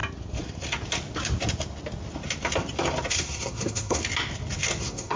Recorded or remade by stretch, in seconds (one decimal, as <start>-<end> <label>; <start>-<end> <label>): 0.0-3.1 recorded; 3.1-4.0 remade; 4.0-4.8 recorded; 4.8-5.2 remade